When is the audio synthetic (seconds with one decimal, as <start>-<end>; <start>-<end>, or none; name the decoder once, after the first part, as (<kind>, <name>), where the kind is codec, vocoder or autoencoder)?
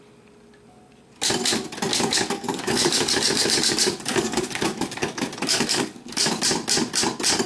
1.9-6.4 (codec, DAC)